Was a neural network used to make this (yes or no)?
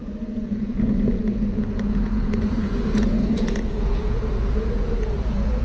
yes